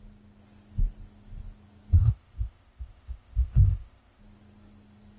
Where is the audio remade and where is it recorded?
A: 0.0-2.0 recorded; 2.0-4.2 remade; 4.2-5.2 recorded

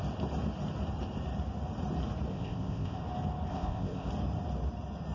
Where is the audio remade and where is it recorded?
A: 0.0-2.3 recorded; 2.3-3.0 remade; 3.0-3.5 recorded; 3.5-4.1 remade; 4.1-5.1 recorded

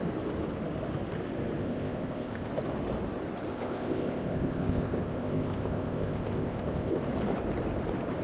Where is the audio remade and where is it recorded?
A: 0.0-1.6 recorded; 1.6-2.5 remade; 2.5-3.5 recorded; 3.5-7.0 remade; 7.0-8.2 recorded

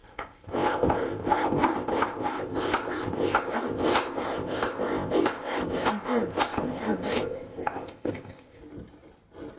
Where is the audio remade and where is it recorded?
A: 0.0-8.6 remade; 8.6-9.6 recorded